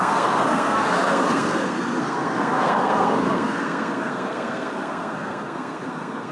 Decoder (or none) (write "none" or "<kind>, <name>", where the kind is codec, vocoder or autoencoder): codec, SNAC